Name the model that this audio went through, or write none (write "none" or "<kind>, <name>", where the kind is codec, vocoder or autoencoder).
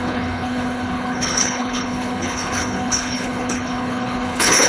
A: codec, HILCodec